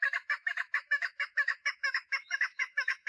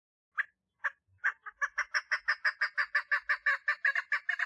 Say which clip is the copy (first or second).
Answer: first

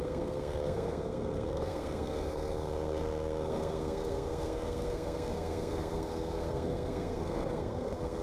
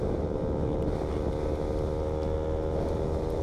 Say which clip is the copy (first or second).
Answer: first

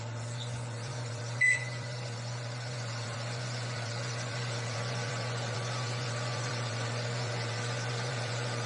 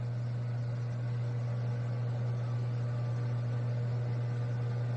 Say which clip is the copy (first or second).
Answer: first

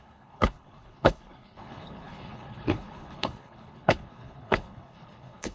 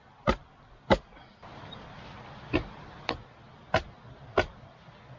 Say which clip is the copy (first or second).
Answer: first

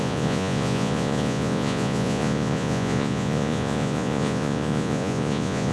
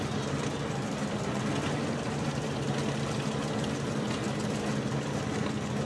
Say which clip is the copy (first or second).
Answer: first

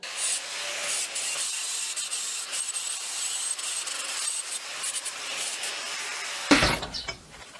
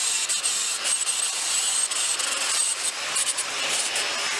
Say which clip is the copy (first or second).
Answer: first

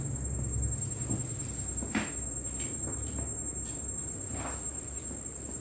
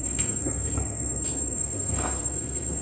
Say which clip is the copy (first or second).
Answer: second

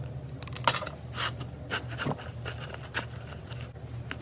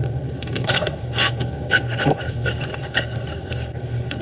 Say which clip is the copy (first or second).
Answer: second